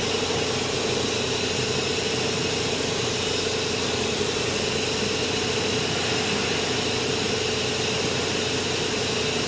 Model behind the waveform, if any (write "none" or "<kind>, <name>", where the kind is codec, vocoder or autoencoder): none